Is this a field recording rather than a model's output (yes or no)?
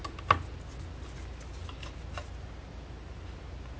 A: yes